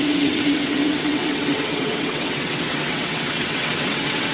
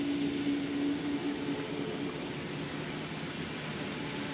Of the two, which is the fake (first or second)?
first